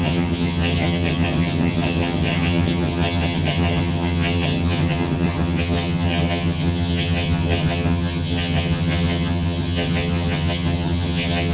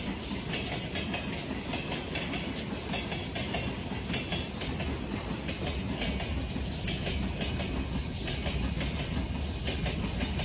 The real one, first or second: second